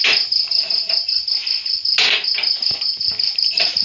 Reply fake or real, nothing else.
real